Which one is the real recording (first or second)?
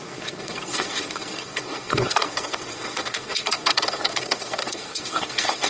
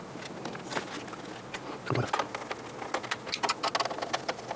second